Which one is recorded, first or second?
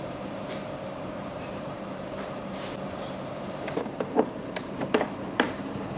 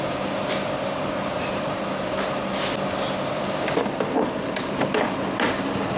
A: second